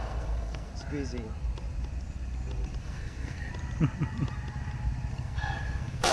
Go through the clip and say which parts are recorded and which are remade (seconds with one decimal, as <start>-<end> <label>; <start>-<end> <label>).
0.0-0.7 remade; 0.7-2.8 recorded; 2.8-3.5 remade; 3.5-5.1 recorded; 5.1-6.1 remade